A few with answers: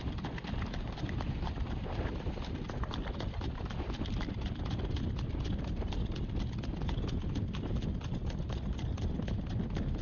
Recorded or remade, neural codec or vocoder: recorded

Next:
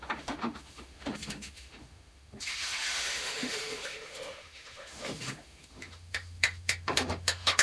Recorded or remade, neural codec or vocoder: remade, autoencoder, DAC-VAE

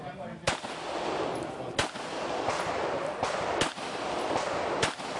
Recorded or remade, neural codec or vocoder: recorded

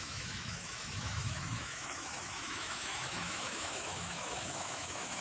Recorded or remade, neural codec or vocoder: remade, autoencoder, DAC-VAE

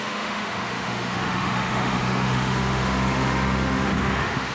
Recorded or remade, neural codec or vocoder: remade, autoencoder, DAC-VAE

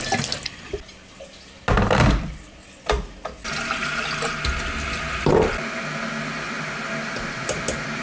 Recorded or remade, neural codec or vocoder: recorded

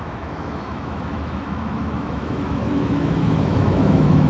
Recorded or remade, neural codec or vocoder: remade, autoencoder, DAC-VAE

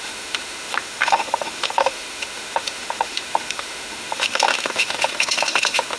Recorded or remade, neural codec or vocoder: remade, autoencoder, DAC-VAE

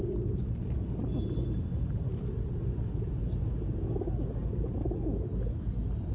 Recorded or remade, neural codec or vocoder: recorded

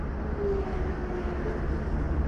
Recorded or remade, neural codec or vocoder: recorded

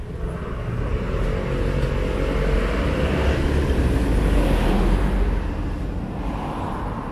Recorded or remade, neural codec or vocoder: recorded